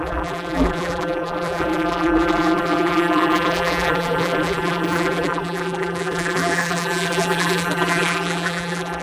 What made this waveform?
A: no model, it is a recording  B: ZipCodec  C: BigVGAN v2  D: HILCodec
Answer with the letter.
C